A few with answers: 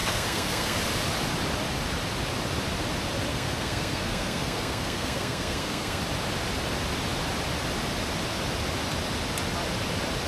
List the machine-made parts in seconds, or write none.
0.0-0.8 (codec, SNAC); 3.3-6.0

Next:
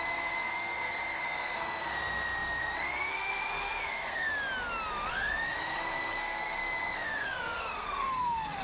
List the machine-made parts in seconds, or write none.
0.0-4.3 (codec, SNAC); 5.1-8.6

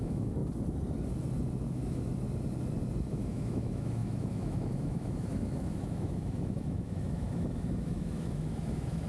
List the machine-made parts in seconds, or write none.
0.0-0.4 (autoencoder, DAC-VAE); 1.7-2.1; 3.1-9.1

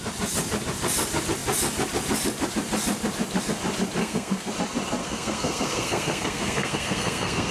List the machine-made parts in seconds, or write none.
4.0-4.5 (codec, SNAC); 5.0-7.5

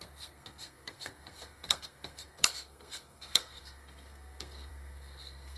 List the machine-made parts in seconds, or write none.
0.0-5.6 (codec, SNAC)